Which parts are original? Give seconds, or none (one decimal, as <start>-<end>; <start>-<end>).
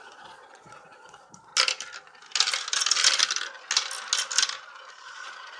1.5-4.9